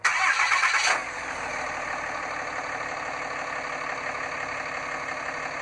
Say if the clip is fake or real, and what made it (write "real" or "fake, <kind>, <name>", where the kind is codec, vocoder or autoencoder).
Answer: real